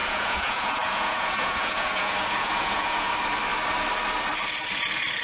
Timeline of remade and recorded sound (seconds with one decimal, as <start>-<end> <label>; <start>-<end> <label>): 0.0-3.1 remade; 3.1-5.2 recorded